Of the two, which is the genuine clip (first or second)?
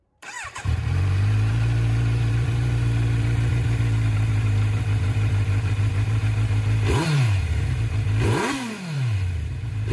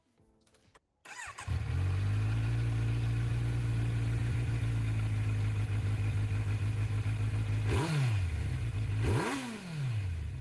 second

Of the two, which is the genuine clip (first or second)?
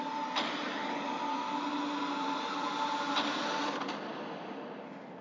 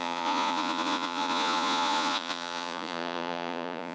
first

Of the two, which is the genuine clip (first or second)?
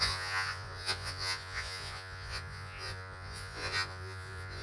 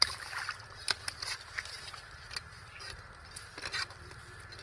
second